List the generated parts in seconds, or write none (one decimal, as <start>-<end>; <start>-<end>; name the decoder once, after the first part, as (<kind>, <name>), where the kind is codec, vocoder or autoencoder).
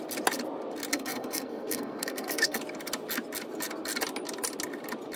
0.9-2.6 (codec, SNAC)